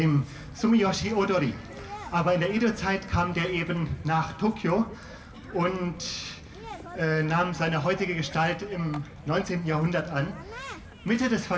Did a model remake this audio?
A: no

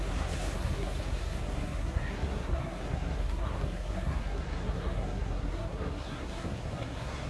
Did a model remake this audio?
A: yes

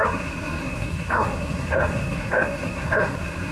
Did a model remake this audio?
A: yes